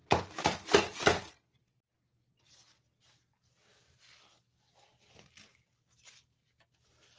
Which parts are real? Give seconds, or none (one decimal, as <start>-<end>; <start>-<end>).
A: 0.0-7.2